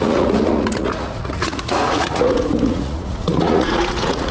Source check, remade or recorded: remade